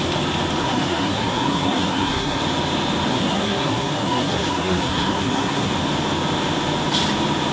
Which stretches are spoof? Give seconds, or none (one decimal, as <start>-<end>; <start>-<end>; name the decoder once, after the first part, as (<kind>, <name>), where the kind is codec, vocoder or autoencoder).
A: 0.6-2.4 (codec, SNAC); 3.1-5.7